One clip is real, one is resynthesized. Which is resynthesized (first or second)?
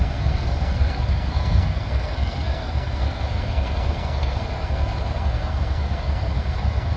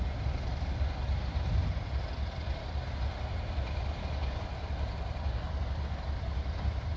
first